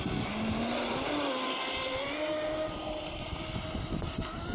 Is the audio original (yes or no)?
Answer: yes